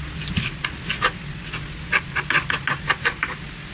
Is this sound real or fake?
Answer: real